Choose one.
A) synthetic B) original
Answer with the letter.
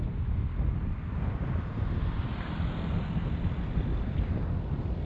B